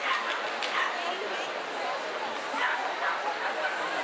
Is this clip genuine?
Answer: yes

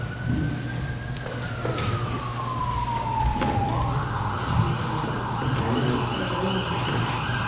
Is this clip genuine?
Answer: yes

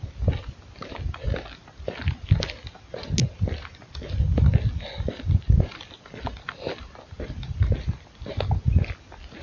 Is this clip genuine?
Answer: yes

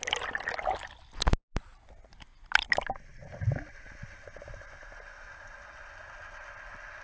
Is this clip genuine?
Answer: yes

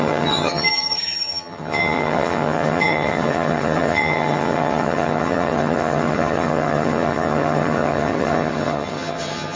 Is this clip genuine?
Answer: no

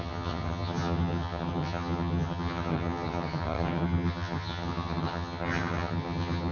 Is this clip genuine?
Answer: no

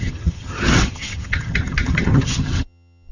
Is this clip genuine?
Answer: no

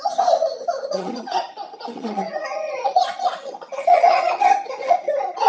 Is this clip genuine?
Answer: no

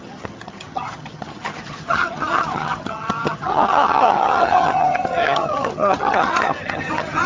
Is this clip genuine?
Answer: no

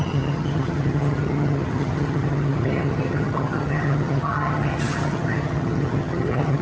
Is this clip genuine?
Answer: no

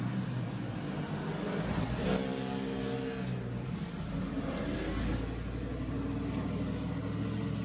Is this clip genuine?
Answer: yes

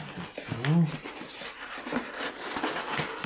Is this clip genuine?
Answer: yes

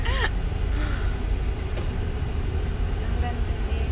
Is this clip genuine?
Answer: yes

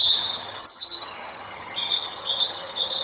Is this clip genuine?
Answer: no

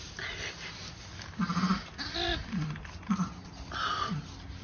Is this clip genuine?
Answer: yes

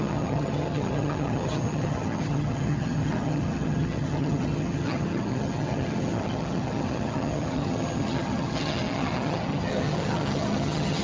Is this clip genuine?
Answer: no